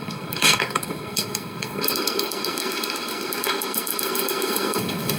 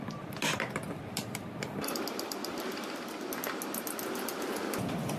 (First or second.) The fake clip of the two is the first